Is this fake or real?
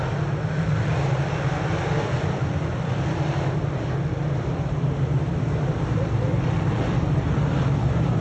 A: fake